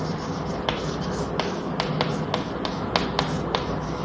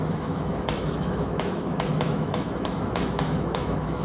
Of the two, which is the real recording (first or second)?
first